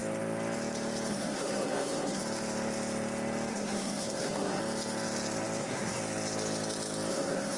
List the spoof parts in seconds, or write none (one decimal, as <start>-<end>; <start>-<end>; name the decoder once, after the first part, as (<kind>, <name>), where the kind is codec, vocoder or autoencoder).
1.1-2.2 (codec, SNAC); 3.5-4.6; 5.6-6.0; 7.1-7.6